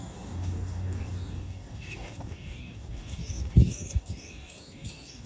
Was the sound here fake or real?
fake